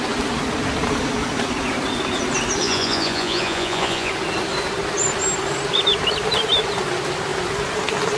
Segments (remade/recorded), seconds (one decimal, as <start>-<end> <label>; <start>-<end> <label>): 0.0-2.6 recorded; 2.6-4.1 remade; 4.1-8.2 recorded